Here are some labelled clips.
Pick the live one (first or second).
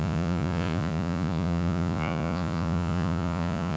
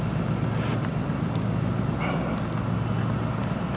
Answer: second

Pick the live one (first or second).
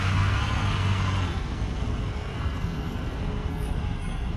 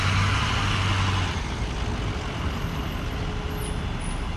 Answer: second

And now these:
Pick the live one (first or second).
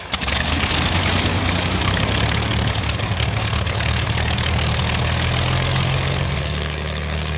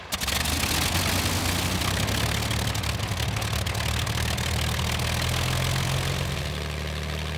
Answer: second